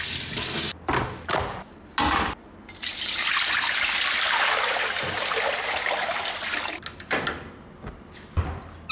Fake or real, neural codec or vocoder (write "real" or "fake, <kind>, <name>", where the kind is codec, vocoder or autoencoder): real